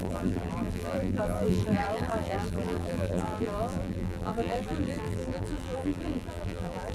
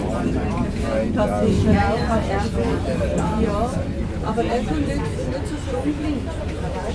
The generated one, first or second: first